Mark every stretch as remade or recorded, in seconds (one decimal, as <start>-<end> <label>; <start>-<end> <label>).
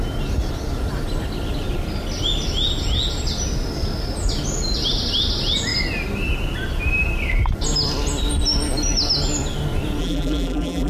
0.0-10.0 recorded; 10.0-10.9 remade